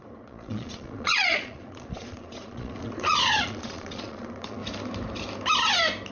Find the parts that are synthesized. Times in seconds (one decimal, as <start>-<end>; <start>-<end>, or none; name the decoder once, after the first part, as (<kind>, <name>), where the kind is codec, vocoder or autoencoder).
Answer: 0.0-4.6 (vocoder, Vocos)